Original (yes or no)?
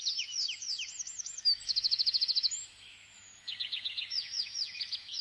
no